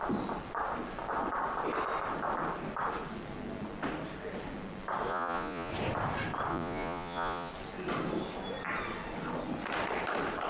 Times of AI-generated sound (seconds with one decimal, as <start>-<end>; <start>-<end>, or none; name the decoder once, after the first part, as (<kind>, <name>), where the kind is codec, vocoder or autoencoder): 5.1-5.7 (vocoder, Vocos); 6.5-7.5